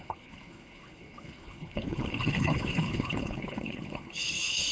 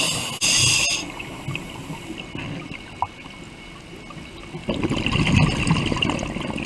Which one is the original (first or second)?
second